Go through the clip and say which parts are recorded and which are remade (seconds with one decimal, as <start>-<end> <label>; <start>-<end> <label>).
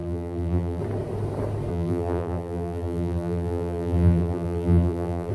0.0-0.8 remade; 0.8-1.7 recorded; 1.7-5.3 remade